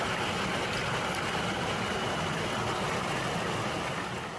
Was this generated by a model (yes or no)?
no